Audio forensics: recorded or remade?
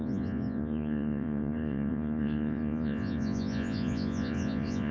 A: remade